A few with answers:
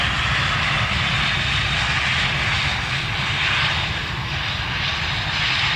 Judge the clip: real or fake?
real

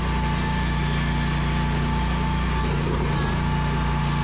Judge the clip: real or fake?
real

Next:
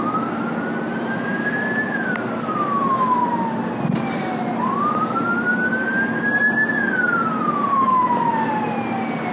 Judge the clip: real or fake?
real